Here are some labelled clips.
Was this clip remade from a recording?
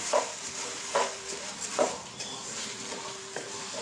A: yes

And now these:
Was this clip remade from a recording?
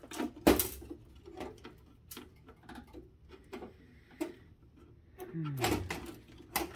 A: no